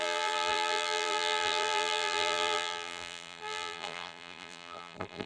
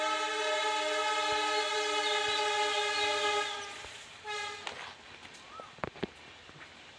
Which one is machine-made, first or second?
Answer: first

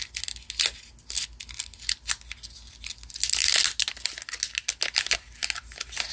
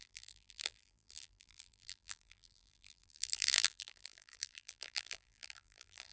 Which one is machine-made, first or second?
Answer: second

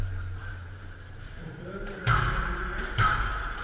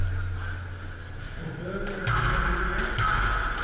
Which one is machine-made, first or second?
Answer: first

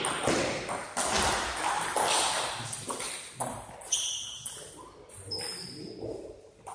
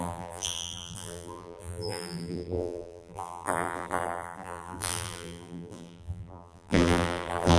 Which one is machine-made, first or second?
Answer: second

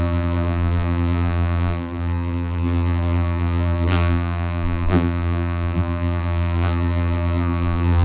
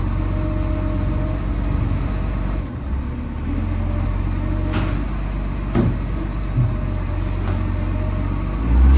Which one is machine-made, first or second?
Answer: first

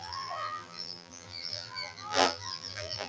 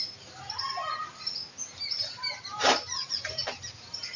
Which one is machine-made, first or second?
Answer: first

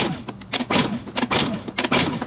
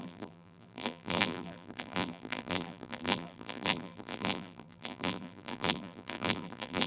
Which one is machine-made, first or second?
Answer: second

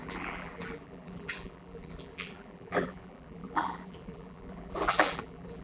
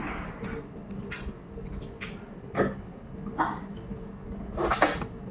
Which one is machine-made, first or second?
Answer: first